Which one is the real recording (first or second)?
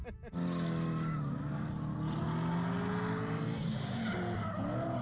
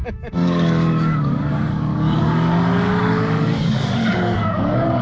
first